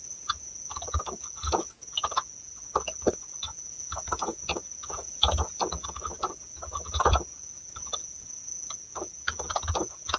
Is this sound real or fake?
fake